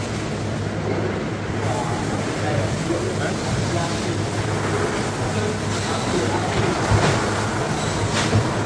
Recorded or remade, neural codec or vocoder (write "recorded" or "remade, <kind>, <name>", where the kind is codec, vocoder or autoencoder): recorded